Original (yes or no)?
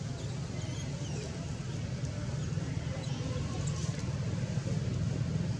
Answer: yes